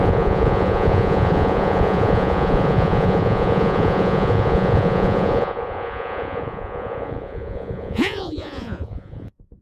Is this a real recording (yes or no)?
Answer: no